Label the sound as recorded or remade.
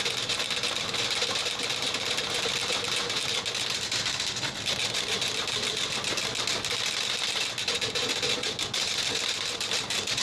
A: recorded